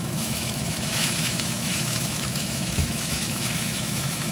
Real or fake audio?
fake